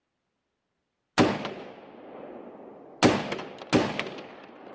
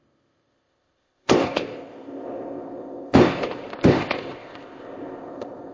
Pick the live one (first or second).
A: first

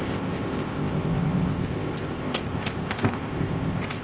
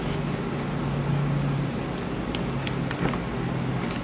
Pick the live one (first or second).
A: second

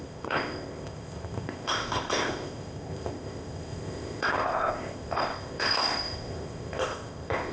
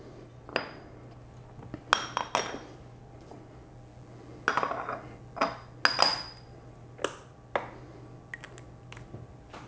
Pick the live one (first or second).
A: second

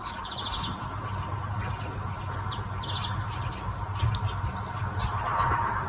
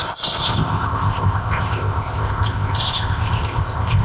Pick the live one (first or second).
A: first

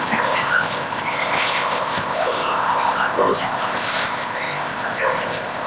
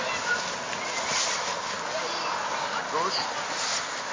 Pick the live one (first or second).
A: second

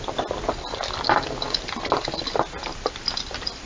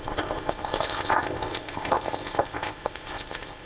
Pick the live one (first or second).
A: first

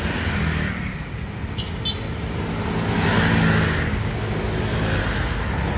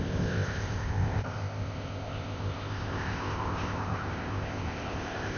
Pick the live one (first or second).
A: first